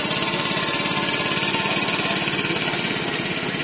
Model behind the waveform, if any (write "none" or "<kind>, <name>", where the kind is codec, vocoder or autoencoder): none